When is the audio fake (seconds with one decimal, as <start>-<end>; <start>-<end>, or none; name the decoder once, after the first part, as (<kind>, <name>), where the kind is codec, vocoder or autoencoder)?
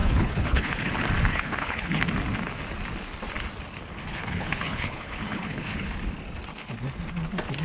0.0-0.9 (codec, HILCodec); 1.3-2.0; 4.0-5.9